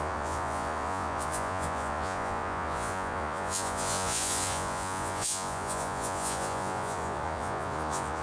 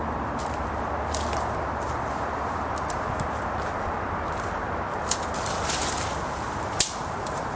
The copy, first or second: first